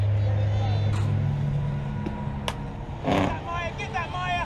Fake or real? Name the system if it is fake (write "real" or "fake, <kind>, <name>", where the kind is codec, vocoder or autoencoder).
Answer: real